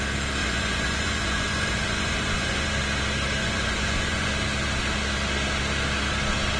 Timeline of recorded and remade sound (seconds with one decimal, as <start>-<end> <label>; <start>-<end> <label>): 0.0-0.4 recorded; 0.4-2.7 remade; 2.7-3.4 recorded; 3.4-4.3 remade; 4.3-6.6 recorded